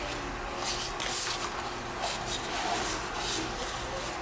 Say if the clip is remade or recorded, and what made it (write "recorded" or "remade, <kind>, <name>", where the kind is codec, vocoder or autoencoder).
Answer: recorded